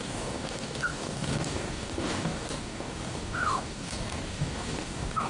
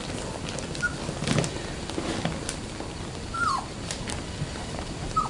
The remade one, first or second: first